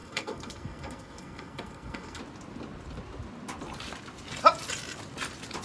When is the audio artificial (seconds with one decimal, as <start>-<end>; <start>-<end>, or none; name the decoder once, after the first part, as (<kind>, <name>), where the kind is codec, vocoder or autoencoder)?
0.0-2.2 (codec, SNAC)